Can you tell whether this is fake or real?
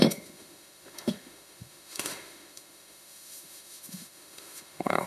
fake